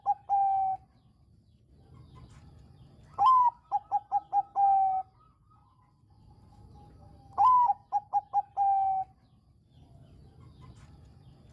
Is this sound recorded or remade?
recorded